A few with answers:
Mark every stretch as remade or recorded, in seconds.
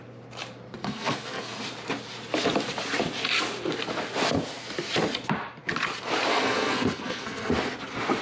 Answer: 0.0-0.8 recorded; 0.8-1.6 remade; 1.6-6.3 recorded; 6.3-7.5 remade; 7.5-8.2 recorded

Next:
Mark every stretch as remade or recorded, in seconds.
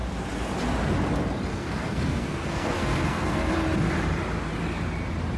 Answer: 0.0-1.5 recorded; 1.5-3.5 remade; 3.5-5.4 recorded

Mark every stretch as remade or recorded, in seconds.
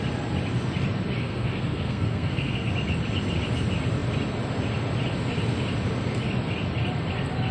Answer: 0.0-1.2 recorded; 1.2-2.7 remade; 2.7-7.5 recorded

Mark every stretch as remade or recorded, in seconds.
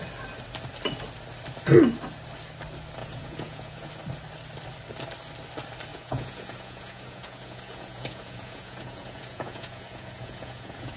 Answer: 0.0-3.0 recorded; 3.0-3.9 remade; 3.9-5.9 recorded; 5.9-11.0 remade